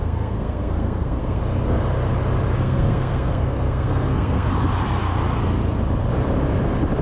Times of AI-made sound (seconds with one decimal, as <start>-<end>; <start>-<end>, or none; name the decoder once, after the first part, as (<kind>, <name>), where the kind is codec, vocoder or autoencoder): 0.0-1.4 (codec, SNAC); 2.5-4.5